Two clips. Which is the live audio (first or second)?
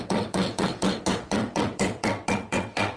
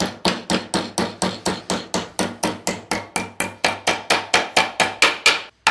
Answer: second